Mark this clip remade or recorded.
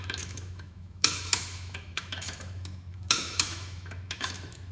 remade